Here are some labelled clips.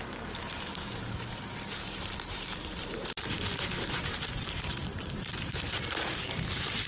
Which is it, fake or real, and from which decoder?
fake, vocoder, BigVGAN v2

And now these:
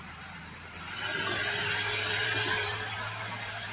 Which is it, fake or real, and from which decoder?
fake, vocoder, BigVGAN v2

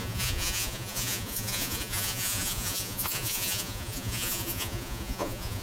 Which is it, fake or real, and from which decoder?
fake, vocoder, Vocos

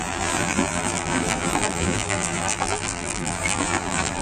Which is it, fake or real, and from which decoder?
fake, vocoder, BigVGAN v2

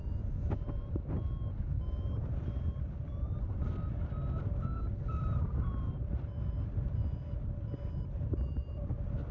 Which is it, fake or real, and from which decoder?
real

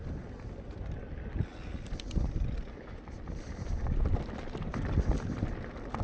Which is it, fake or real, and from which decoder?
real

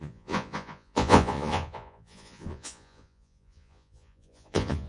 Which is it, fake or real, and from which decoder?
fake, vocoder, Vocos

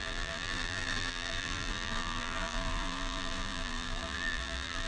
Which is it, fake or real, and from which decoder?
fake, vocoder, BigVGAN v2